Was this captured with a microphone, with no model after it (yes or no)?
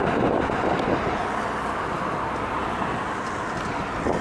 yes